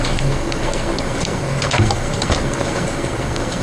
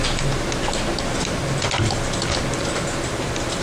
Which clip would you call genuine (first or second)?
second